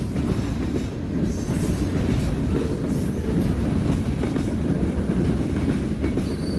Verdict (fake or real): real